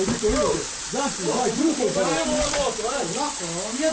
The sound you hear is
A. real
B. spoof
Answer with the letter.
A